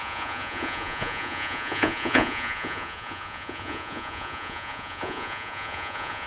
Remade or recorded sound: remade